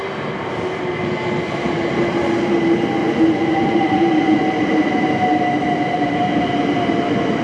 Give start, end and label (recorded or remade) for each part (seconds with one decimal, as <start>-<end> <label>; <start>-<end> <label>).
0.0-3.0 recorded; 3.0-4.4 remade; 4.4-7.4 recorded